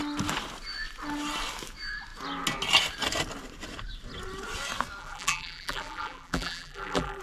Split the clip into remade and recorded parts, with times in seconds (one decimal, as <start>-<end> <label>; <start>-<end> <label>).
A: 0.0-5.0 recorded; 5.0-7.2 remade